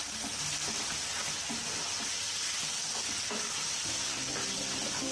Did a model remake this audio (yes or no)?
no